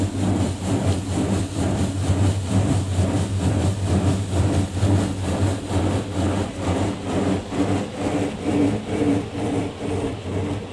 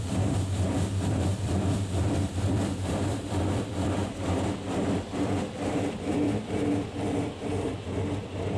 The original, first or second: first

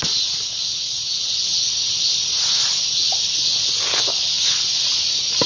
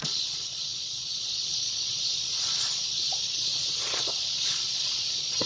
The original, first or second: first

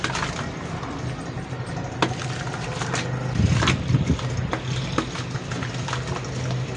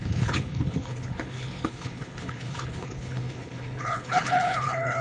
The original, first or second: first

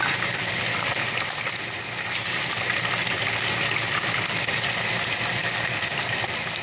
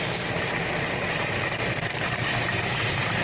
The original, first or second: first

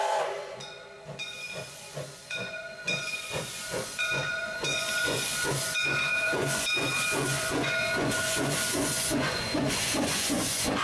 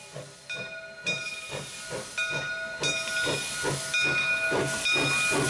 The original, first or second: second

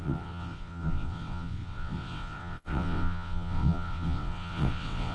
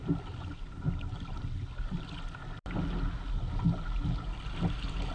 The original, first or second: second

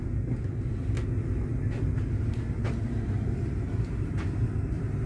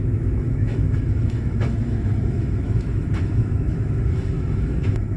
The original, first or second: first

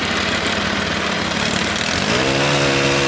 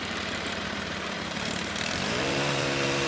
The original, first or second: first